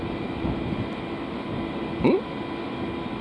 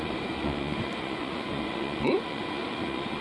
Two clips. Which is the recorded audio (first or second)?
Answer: first